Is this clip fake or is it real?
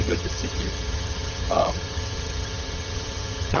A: fake